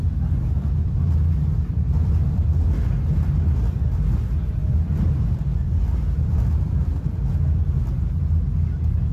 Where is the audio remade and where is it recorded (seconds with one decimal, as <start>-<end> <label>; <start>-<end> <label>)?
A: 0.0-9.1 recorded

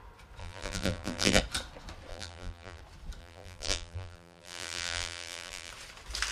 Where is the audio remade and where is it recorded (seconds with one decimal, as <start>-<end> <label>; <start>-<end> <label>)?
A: 0.0-0.4 recorded; 0.4-1.4 remade; 1.4-2.1 recorded; 2.1-2.8 remade; 2.8-3.2 recorded; 3.2-5.7 remade; 5.7-6.3 recorded

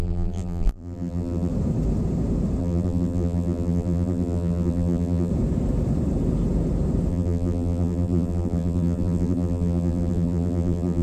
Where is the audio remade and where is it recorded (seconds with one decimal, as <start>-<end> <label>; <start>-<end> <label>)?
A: 0.0-1.5 remade; 1.5-2.6 recorded; 2.6-5.3 remade; 5.3-7.1 recorded; 7.1-11.0 remade

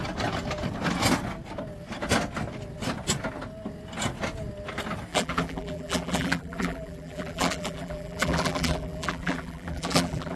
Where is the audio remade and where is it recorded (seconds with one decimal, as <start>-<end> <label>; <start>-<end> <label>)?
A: 0.0-5.1 recorded; 5.1-10.4 remade

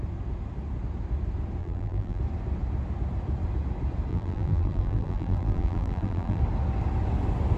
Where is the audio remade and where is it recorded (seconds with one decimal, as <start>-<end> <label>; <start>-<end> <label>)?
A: 0.0-1.6 recorded; 1.6-2.2 remade; 2.2-4.1 recorded; 4.1-6.4 remade; 6.4-7.6 recorded

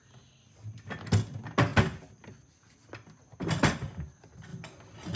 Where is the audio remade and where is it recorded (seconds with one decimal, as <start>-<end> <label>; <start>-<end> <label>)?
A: 0.0-5.2 recorded